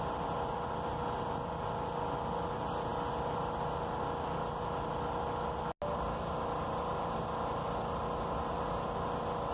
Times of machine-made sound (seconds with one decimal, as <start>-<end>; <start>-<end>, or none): none